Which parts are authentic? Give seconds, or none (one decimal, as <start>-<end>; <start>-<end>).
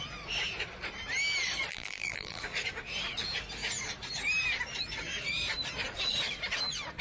0.0-1.7; 2.4-7.0